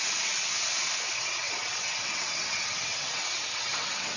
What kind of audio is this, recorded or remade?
remade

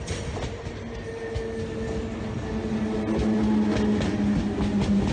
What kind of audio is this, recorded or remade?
recorded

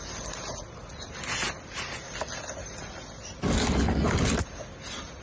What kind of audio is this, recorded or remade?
recorded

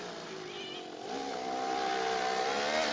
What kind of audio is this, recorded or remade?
recorded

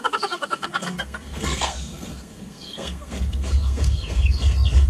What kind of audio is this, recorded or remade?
remade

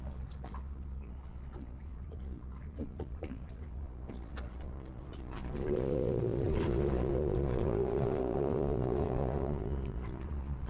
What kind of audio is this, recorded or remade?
remade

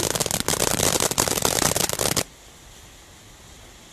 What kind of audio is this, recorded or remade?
recorded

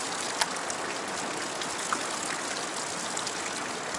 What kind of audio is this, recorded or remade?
recorded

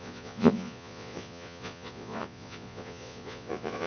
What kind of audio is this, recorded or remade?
remade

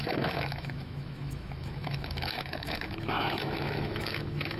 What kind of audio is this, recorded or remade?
remade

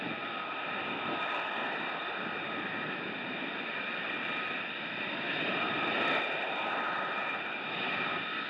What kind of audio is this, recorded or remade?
recorded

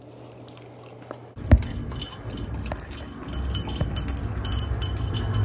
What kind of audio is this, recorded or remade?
recorded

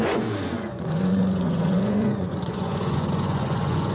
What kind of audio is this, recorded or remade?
remade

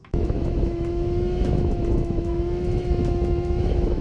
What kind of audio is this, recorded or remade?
remade